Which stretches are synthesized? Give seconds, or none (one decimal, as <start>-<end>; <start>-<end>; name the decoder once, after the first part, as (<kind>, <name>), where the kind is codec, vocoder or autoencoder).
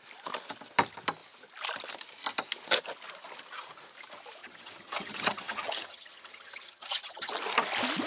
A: 4.4-7.3 (vocoder, HiFi-GAN)